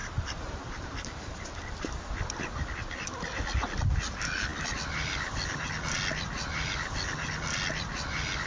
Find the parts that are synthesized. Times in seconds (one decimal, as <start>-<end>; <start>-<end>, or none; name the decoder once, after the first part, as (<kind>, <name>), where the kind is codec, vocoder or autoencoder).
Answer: 0.0-2.1 (vocoder, BigVGAN v2)